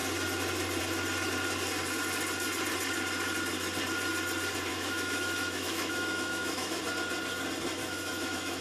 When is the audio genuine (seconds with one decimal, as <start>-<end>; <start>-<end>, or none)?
0.0-4.7; 6.8-7.8